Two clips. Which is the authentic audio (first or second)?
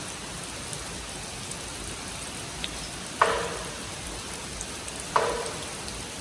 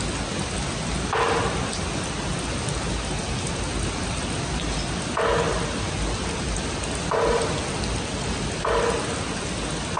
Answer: second